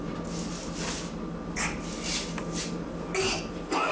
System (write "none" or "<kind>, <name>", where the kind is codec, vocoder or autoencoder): none